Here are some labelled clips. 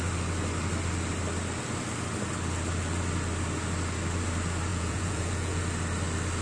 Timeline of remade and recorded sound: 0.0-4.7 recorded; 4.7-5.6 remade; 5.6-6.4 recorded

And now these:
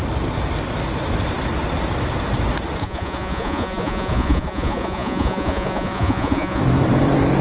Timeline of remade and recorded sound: 0.0-2.8 recorded; 2.8-6.6 remade; 6.6-7.4 recorded

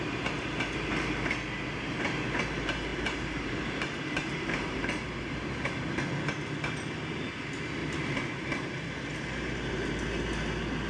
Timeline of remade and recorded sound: 0.0-2.9 recorded; 2.9-5.9 remade; 5.9-7.8 recorded; 7.8-9.7 remade; 9.7-10.9 recorded

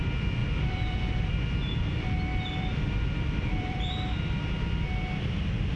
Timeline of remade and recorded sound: 0.0-0.4 recorded; 0.4-1.3 remade; 1.3-2.3 recorded; 2.3-3.9 remade; 3.9-5.8 recorded

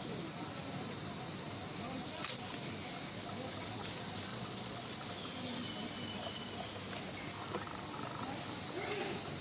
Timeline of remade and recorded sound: 0.0-4.3 recorded; 4.3-5.0 remade; 5.0-9.4 recorded

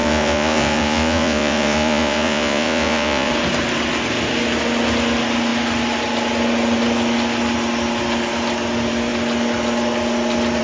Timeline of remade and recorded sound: 0.0-3.3 remade; 3.3-10.6 recorded

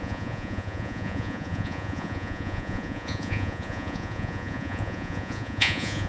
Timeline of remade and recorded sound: 0.0-6.1 remade

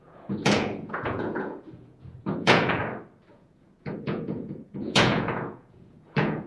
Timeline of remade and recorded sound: 0.0-2.8 remade; 2.8-3.3 recorded; 3.3-6.5 remade